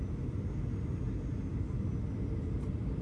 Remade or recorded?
recorded